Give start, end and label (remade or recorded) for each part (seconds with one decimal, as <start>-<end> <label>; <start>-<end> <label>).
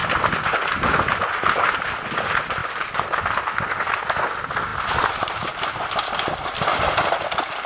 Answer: 0.0-7.7 recorded